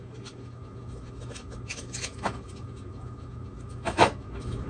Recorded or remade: remade